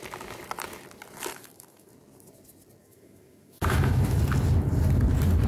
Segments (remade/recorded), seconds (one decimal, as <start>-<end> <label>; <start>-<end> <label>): 0.0-1.3 recorded; 1.3-1.9 remade; 1.9-2.8 recorded; 2.8-4.2 remade; 4.2-5.5 recorded